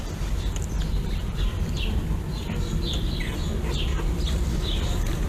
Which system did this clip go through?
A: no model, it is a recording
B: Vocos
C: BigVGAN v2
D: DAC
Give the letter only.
C